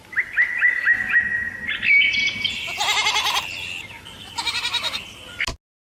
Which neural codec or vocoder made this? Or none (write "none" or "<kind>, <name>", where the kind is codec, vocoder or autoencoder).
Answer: none